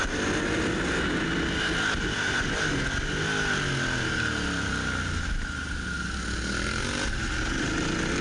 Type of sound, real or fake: real